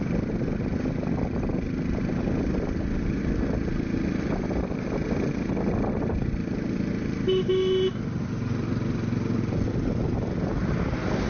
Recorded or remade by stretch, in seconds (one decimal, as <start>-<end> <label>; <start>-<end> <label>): 0.0-11.3 recorded